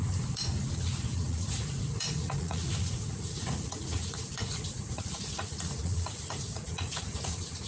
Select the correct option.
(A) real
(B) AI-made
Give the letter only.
B